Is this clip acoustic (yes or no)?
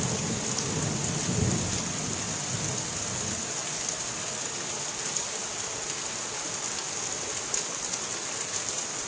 yes